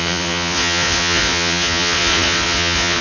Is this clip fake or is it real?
fake